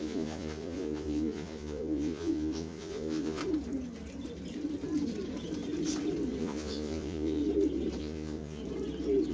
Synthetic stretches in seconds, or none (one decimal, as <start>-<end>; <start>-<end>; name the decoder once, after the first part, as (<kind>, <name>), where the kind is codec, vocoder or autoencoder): 0.0-3.4 (vocoder, Vocos); 6.4-7.4; 8.0-8.6